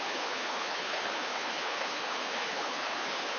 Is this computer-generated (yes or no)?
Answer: yes